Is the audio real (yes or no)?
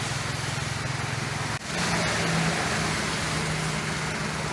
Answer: yes